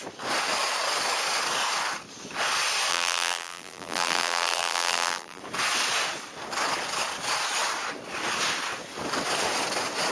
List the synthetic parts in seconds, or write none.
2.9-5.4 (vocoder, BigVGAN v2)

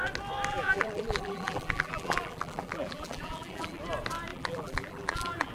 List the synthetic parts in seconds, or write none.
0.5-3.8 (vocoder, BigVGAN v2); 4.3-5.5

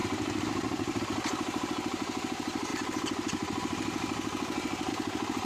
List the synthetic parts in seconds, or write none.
0.0-5.4 (vocoder, BigVGAN v2)

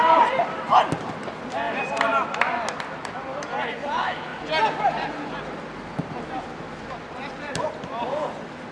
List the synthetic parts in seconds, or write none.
0.0-4.3 (vocoder, BigVGAN v2); 7.3-8.7

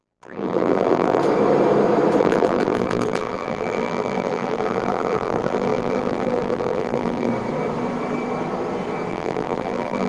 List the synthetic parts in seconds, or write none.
0.0-1.2 (vocoder, BigVGAN v2); 2.2-7.3; 9.1-10.1

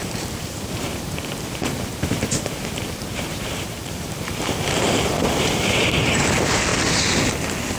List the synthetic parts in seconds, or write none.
0.0-6.7 (vocoder, BigVGAN v2)

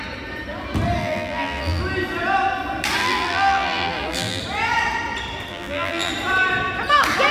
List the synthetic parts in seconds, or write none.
1.0-1.8 (vocoder, BigVGAN v2); 3.0-4.4; 5.5-6.1

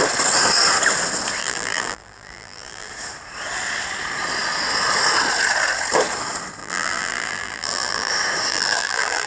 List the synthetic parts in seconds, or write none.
1.4-2.9 (vocoder, BigVGAN v2); 6.6-8.1; 8.5-9.3